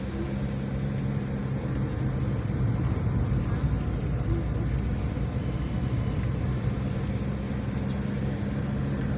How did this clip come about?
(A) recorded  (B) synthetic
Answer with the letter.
A